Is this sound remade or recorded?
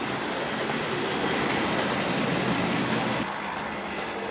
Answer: recorded